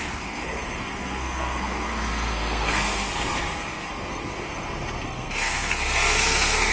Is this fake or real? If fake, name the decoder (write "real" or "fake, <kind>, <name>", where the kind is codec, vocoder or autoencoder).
fake, codec, SNAC